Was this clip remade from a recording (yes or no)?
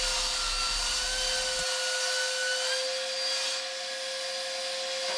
no